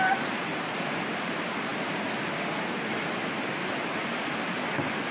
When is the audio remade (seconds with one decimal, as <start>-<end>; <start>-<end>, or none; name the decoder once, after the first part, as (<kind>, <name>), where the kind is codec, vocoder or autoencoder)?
0.5-1.0 (vocoder, BigVGAN v2)